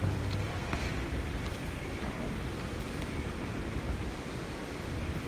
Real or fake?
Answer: fake